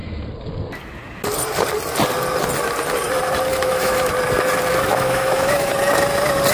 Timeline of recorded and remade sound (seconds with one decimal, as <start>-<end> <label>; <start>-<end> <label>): 0.0-3.5 recorded; 3.5-4.1 remade; 4.1-4.9 recorded; 4.9-5.7 remade; 5.7-6.5 recorded